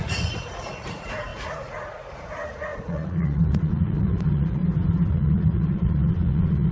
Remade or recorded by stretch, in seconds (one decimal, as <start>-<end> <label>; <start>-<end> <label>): 0.0-4.6 remade; 4.6-5.1 recorded; 5.1-6.7 remade